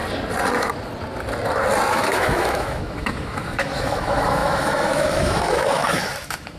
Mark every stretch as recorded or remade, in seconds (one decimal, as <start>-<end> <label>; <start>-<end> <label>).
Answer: 0.0-1.9 recorded; 1.9-6.6 remade

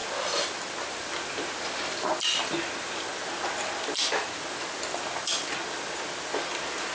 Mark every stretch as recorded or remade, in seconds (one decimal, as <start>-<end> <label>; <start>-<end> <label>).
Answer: 0.0-6.9 recorded

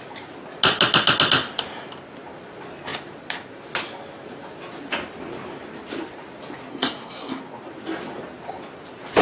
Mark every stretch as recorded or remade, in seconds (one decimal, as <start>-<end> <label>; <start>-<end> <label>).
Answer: 0.0-6.7 recorded; 6.7-7.4 remade; 7.4-9.2 recorded

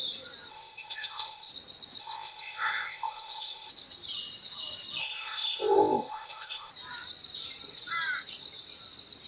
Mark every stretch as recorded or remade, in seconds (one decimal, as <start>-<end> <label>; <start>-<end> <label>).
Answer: 0.0-0.5 recorded; 0.5-1.5 remade; 1.5-2.0 recorded; 2.0-3.7 remade; 3.7-5.0 recorded; 5.0-6.7 remade; 6.7-9.3 recorded